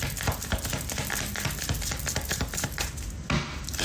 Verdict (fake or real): real